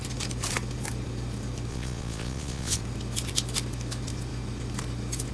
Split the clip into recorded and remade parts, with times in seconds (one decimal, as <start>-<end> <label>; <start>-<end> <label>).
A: 0.0-1.7 recorded; 1.7-2.8 remade; 2.8-5.3 recorded

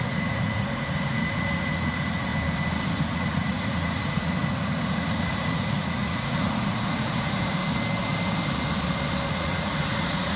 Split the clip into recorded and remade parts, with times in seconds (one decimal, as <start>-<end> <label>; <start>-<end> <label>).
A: 0.0-2.3 remade; 2.3-3.1 recorded; 3.1-7.6 remade; 7.6-9.3 recorded; 9.3-10.4 remade

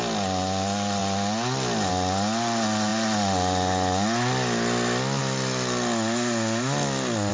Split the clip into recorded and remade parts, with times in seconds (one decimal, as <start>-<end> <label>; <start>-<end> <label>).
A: 0.0-7.3 recorded

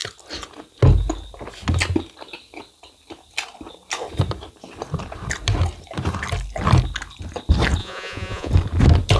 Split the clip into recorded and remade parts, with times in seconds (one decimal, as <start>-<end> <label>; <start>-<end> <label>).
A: 0.0-7.8 recorded; 7.8-8.5 remade; 8.5-9.2 recorded

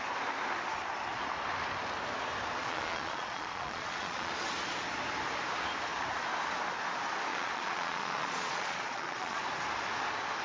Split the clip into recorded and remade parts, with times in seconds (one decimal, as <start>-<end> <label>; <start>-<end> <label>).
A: 0.0-2.6 recorded; 2.6-4.3 remade; 4.3-7.3 recorded; 7.3-9.4 remade; 9.4-10.4 recorded